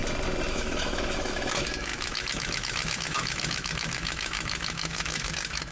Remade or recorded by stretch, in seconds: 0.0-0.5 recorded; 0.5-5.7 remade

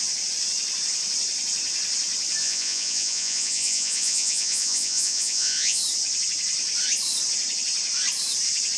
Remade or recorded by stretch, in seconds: 0.0-2.4 recorded; 2.4-5.8 remade; 5.8-8.8 recorded

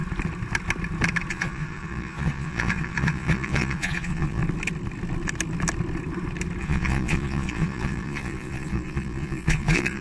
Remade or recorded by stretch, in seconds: 0.0-1.3 recorded; 1.3-4.4 remade; 4.4-6.6 recorded; 6.6-10.0 remade